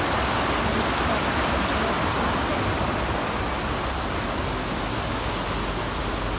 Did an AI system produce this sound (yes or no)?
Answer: no